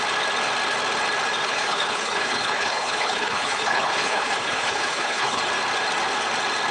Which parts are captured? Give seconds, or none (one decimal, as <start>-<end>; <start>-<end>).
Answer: 0.0-1.4; 5.4-6.7